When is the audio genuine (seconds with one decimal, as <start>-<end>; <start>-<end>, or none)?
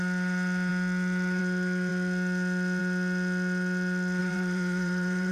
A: 0.0-4.2